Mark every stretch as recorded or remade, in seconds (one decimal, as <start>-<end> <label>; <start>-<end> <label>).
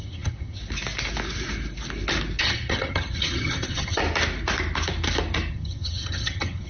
0.0-0.6 remade; 0.6-2.4 recorded; 2.4-4.0 remade; 4.0-5.5 recorded; 5.5-6.7 remade